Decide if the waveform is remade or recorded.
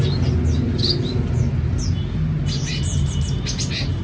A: recorded